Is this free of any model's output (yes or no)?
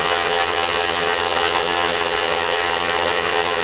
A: no